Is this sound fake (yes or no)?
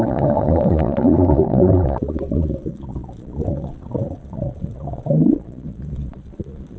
yes